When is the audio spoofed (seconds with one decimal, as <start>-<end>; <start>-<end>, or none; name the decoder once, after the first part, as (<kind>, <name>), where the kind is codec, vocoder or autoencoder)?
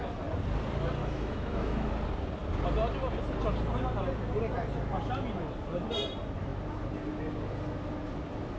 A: 1.0-1.9 (autoencoder, DAC-VAE)